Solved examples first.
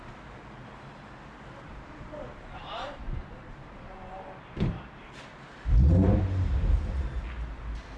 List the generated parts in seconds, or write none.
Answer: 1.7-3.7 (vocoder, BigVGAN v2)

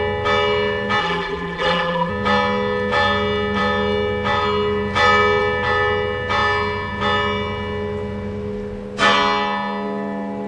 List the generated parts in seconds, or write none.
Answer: 1.0-2.1 (vocoder, BigVGAN v2)

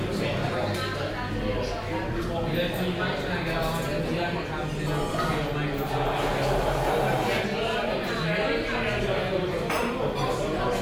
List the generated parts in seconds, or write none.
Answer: none

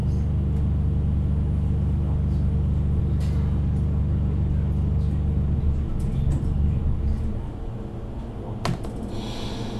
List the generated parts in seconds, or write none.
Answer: none

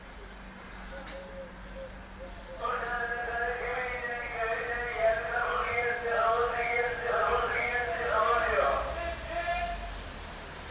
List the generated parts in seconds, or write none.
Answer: none

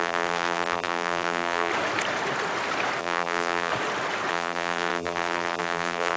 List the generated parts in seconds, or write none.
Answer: 0.0-1.7 (vocoder, BigVGAN v2); 3.0-3.7; 4.3-6.2